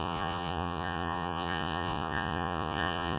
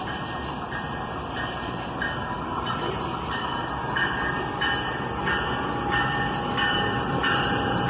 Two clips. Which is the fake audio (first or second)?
first